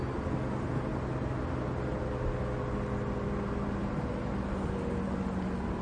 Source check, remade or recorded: recorded